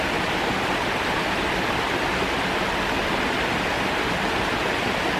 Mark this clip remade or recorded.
recorded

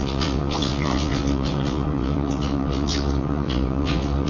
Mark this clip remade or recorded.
remade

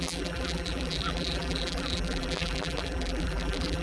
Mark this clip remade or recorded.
remade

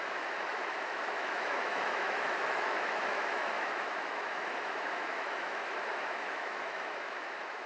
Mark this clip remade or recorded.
remade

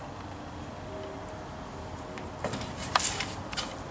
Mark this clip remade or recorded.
recorded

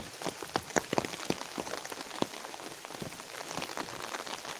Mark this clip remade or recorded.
recorded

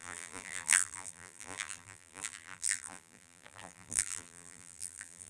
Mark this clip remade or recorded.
remade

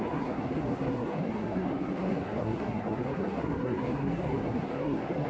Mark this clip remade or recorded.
remade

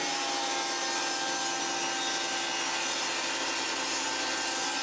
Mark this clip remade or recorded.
recorded